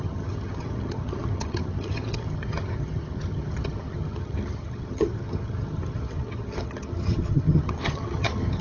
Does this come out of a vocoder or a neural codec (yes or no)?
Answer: yes